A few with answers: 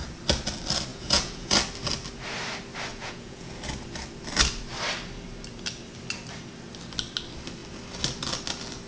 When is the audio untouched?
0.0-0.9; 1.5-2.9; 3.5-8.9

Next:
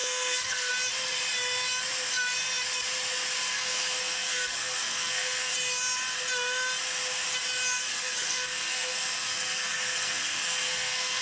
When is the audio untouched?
0.7-3.5; 5.5-7.8

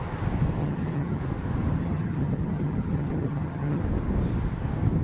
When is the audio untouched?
0.0-0.6; 1.2-1.8; 3.8-5.0

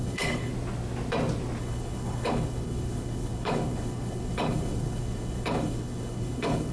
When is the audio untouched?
0.5-1.6

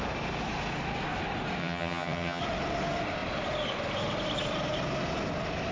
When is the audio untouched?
0.0-1.6; 2.4-5.7

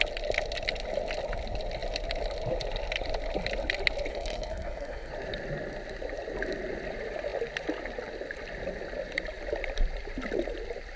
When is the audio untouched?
0.0-4.1; 5.1-11.0